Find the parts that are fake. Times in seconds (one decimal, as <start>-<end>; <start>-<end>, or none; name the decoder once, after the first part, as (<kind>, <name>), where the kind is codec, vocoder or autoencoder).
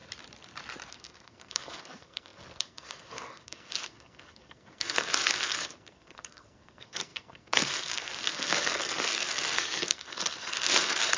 0.9-11.2 (codec, SNAC)